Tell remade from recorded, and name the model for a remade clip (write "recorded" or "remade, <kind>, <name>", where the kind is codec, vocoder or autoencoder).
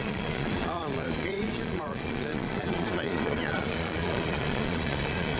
remade, vocoder, Vocos